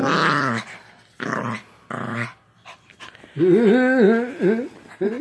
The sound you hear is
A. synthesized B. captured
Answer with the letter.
B